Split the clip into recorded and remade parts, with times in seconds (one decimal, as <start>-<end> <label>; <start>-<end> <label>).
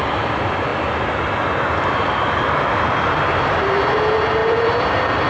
0.0-4.4 recorded; 4.4-5.3 remade